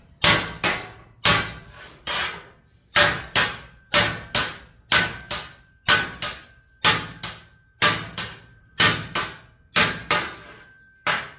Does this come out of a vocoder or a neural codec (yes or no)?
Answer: no